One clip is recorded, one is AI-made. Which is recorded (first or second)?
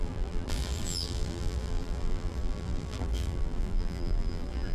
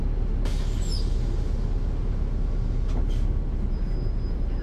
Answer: second